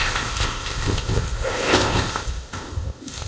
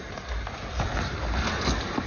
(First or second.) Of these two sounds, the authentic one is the second